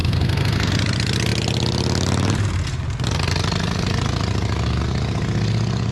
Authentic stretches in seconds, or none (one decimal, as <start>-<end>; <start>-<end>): 0.7-5.9